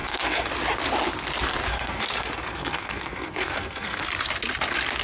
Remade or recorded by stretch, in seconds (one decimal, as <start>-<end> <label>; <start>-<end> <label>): 0.0-0.5 remade; 0.5-1.7 recorded; 1.7-4.0 remade; 4.0-5.0 recorded